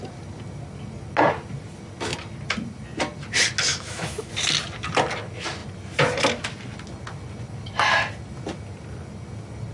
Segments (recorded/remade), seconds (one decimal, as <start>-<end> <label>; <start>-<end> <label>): 0.0-3.7 recorded; 3.7-4.3 remade; 4.3-9.7 recorded